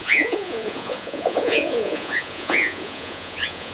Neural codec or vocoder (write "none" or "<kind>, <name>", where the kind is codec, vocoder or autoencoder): vocoder, Vocos